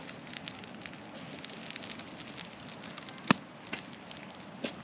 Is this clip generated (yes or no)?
no